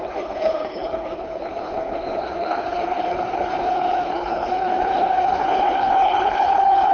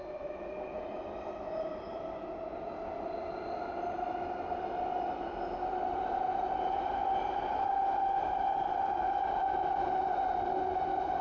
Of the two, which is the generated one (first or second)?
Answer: first